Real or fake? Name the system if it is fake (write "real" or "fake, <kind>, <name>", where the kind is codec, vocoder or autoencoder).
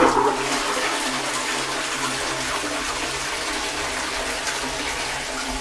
real